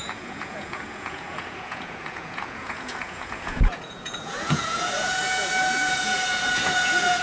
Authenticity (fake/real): fake